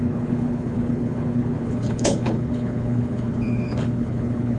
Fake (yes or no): yes